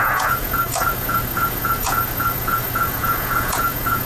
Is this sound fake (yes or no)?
yes